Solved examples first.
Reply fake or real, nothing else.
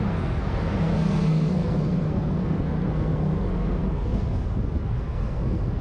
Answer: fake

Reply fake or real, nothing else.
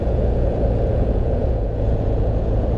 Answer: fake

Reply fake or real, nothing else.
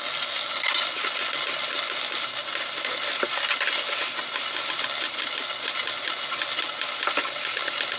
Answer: real